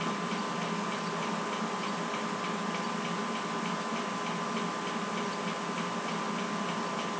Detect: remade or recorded recorded